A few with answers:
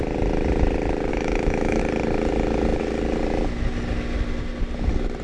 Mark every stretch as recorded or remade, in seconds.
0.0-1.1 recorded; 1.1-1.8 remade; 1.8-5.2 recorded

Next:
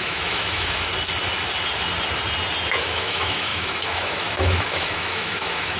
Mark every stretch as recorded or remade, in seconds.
0.0-0.9 remade; 0.9-2.8 recorded; 2.8-5.8 remade

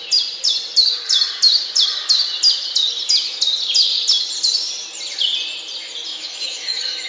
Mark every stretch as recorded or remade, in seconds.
0.0-6.1 recorded; 6.1-7.1 remade

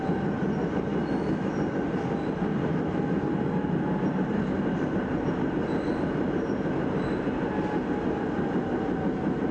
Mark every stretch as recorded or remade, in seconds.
0.0-0.9 recorded; 0.9-1.5 remade; 1.5-2.6 recorded; 2.6-3.2 remade; 3.2-9.5 recorded

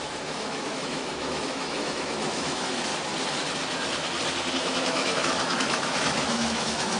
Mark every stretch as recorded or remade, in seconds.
0.0-2.9 remade; 2.9-4.5 recorded; 4.5-7.0 remade

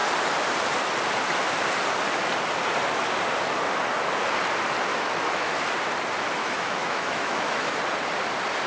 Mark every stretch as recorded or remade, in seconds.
0.0-4.9 recorded; 4.9-5.5 remade; 5.5-6.4 recorded; 6.4-7.7 remade; 7.7-8.7 recorded

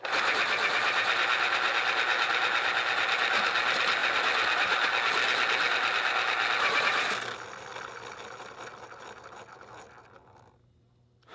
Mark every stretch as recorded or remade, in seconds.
0.0-11.3 recorded

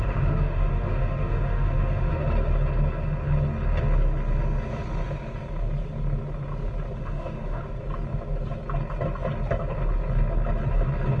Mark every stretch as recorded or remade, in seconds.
0.0-2.1 remade; 2.1-7.0 recorded; 7.0-7.6 remade; 7.6-11.2 recorded